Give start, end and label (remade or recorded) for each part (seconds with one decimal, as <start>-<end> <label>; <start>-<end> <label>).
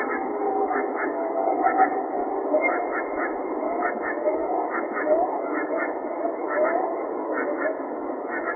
0.0-2.2 remade; 2.2-3.9 recorded; 3.9-8.6 remade